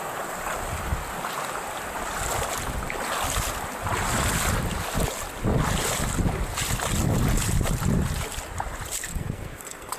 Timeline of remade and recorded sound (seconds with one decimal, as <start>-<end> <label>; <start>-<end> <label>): 0.0-9.1 recorded; 9.1-10.0 remade